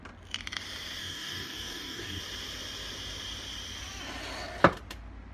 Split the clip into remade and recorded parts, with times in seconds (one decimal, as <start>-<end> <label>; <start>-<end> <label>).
0.0-1.0 recorded; 1.0-2.2 remade; 2.2-5.3 recorded